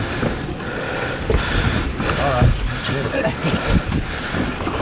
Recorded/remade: recorded